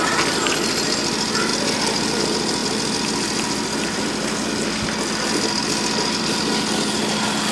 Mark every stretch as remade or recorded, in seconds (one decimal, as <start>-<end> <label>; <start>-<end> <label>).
0.0-7.5 recorded